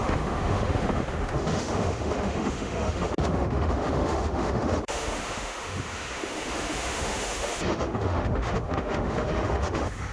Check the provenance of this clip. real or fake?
fake